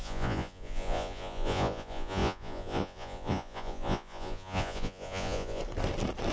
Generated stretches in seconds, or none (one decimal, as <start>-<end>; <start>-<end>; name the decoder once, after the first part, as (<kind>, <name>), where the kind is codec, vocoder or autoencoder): 0.0-5.6 (vocoder, Vocos)